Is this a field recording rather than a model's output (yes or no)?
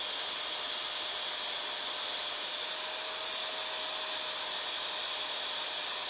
yes